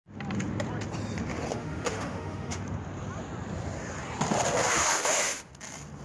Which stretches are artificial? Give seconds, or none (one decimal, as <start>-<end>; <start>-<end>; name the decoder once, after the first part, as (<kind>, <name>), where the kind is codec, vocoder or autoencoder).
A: 1.5-2.6 (autoencoder, DAC-VAE); 4.6-5.5